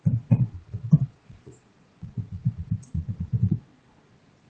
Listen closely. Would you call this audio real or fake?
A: fake